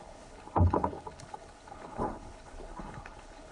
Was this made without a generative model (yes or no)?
no